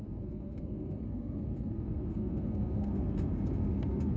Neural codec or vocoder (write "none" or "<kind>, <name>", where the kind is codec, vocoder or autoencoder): codec, SNAC